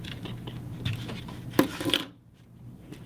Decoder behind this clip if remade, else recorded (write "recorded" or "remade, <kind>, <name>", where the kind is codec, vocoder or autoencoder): remade, vocoder, BigVGAN v2